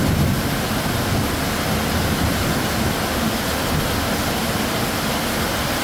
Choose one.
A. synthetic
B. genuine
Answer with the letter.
B